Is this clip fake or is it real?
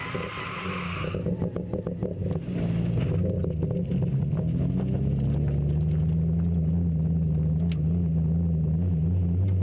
real